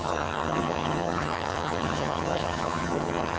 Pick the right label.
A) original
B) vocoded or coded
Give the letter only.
B